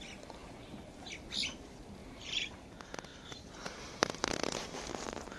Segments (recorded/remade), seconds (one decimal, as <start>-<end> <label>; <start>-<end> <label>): 0.0-0.4 recorded; 0.4-1.1 remade; 1.1-2.0 recorded; 2.0-2.5 remade; 2.5-3.1 recorded; 3.1-4.3 remade; 4.3-5.4 recorded